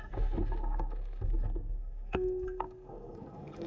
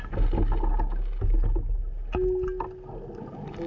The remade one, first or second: first